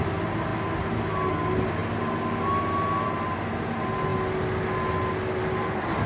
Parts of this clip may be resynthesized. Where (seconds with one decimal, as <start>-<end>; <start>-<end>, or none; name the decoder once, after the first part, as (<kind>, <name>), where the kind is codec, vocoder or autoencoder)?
none